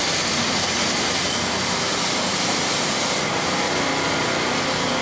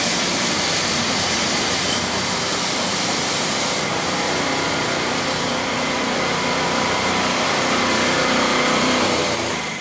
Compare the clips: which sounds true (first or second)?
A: first